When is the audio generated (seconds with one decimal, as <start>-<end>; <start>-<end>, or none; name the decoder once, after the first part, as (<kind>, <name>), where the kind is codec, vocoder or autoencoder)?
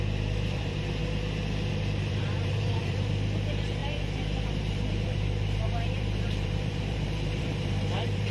0.0-1.0 (vocoder, BigVGAN v2); 1.7-8.3